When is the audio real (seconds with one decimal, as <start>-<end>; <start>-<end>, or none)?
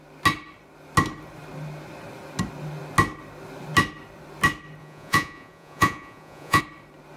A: 0.0-4.8; 6.6-7.2